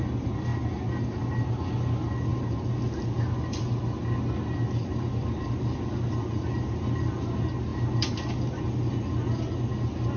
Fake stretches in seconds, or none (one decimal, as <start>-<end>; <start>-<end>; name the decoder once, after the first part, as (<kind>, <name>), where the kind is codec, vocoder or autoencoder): none